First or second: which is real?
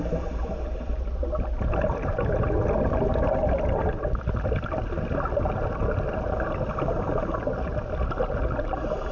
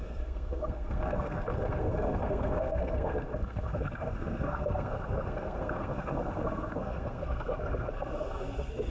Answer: first